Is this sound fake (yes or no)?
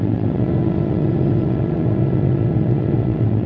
yes